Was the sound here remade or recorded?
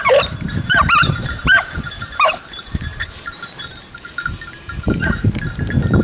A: remade